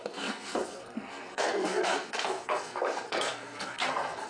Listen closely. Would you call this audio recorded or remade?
remade